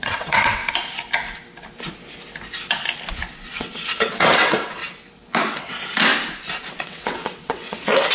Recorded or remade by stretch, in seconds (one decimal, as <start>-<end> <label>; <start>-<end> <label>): 0.0-0.6 remade; 0.6-3.6 recorded; 3.6-4.8 remade; 4.8-5.6 recorded; 5.6-6.1 remade; 6.1-6.7 recorded; 6.7-8.1 remade